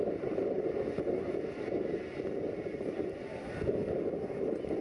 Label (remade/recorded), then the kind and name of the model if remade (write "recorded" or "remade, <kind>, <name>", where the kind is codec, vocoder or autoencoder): remade, vocoder, BigVGAN v2